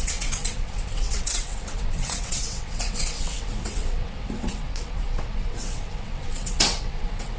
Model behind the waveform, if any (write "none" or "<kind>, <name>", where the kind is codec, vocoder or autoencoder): vocoder, WaveNeXt